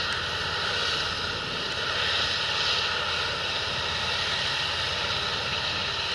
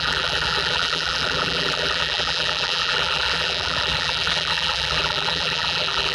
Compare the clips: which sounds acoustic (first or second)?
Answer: first